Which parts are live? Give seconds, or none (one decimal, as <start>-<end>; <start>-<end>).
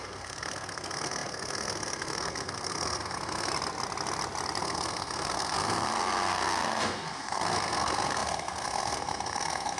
3.5-4.6